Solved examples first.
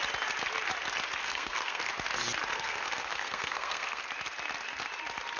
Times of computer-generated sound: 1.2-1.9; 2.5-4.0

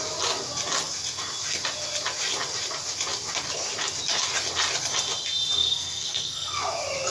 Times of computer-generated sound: 5.6-6.6